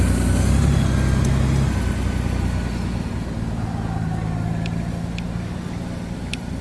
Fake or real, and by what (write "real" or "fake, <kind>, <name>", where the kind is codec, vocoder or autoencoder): real